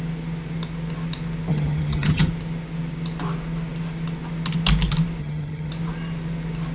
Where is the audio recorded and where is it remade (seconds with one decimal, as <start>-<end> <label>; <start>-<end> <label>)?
0.0-1.5 recorded; 1.5-2.3 remade; 2.3-5.2 recorded; 5.2-5.7 remade; 5.7-6.7 recorded

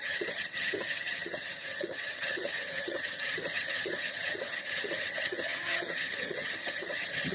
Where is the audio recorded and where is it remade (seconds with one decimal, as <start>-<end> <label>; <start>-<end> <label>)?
0.0-7.3 remade

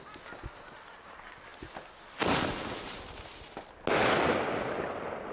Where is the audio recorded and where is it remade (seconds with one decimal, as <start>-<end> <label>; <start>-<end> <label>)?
0.0-5.3 recorded

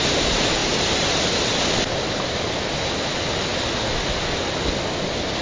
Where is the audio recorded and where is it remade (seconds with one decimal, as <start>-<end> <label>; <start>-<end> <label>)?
0.0-5.4 recorded